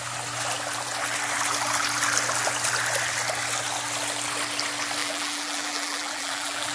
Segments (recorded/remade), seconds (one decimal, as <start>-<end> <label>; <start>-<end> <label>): 0.0-5.0 recorded; 5.0-6.7 remade